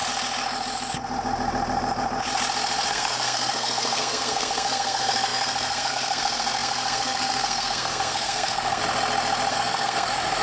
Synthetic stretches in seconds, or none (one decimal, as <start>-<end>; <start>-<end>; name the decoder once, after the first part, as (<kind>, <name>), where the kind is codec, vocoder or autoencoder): 2.9-8.8 (codec, SNAC); 9.5-10.4